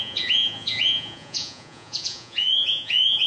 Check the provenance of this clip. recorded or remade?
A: remade